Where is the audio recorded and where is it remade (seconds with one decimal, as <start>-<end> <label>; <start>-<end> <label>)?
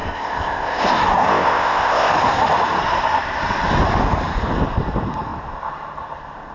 0.0-0.9 remade; 0.9-1.3 recorded; 1.3-2.1 remade; 2.1-6.5 recorded